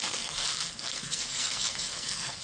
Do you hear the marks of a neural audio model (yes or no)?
yes